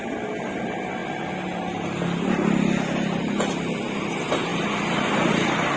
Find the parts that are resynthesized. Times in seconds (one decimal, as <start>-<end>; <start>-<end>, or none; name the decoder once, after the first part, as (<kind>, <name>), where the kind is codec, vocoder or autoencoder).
none